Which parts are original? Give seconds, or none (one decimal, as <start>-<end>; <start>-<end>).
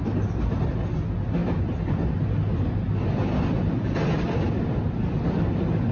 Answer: 0.0-5.9